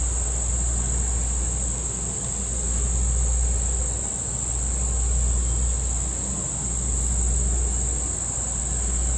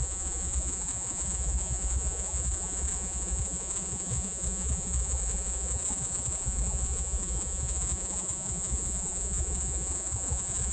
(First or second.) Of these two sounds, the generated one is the second